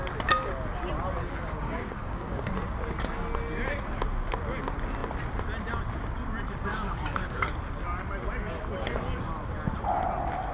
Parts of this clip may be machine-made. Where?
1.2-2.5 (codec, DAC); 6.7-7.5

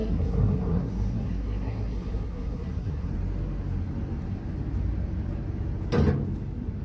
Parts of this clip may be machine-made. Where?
0.0-3.1 (codec, SNAC)